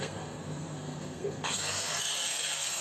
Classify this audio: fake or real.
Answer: fake